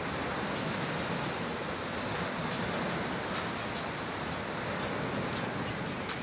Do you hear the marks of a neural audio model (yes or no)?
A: no